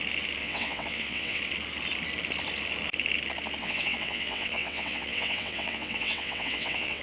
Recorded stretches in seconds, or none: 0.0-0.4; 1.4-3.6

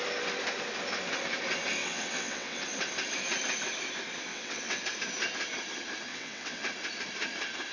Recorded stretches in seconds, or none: 0.0-1.8; 2.6-4.3; 4.8-6.1; 6.6-7.7

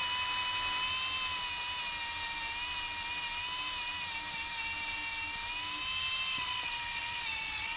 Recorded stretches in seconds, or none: 0.0-6.3

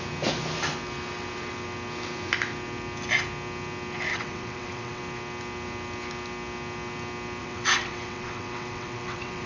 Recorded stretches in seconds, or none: 0.0-4.1; 5.0-7.4

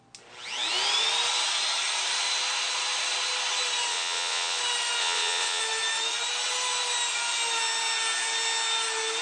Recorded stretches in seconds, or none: 0.0-3.9; 4.6-5.0; 5.6-9.2

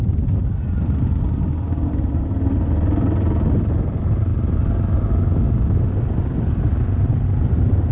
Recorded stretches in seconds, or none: 0.0-7.9